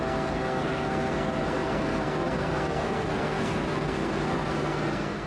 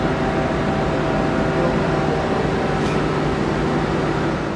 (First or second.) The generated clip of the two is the first